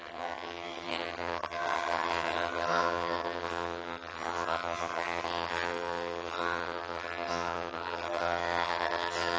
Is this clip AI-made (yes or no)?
yes